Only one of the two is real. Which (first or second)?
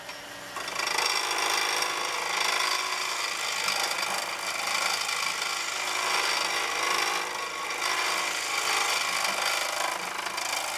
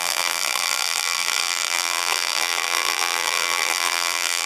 first